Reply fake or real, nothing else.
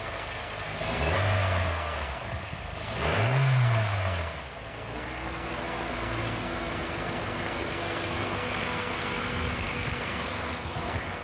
fake